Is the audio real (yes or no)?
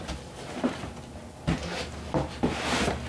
yes